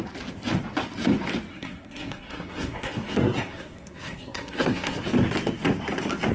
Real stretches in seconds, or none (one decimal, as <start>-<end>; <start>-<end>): 0.0-1.5; 5.0-6.3